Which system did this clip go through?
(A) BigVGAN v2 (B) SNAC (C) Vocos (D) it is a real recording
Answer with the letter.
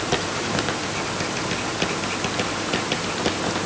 D